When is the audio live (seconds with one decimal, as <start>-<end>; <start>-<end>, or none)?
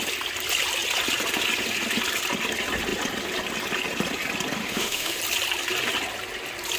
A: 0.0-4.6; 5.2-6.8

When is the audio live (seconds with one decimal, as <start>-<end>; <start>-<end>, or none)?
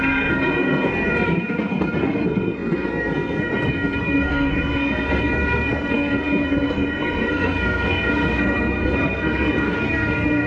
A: none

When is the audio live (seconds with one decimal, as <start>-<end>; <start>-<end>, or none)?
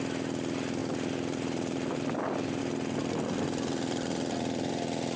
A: 0.0-0.8; 2.6-3.0; 4.7-5.2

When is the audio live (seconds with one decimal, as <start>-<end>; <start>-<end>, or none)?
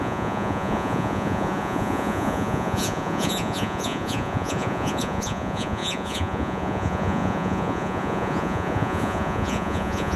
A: none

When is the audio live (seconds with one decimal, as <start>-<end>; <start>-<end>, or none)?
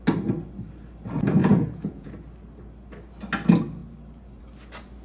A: 0.0-1.4; 2.1-5.0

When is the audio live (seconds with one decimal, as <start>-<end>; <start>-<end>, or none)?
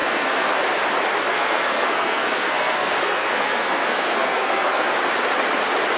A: 0.6-1.3; 4.9-6.0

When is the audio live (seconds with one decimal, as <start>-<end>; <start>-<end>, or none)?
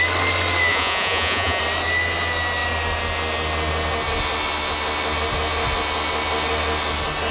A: 0.0-0.7; 1.6-7.3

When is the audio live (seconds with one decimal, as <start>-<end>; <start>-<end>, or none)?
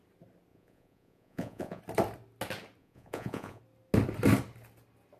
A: 0.0-0.5; 1.8-2.8; 3.6-5.2